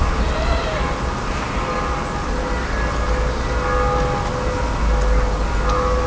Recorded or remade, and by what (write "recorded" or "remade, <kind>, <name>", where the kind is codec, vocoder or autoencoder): recorded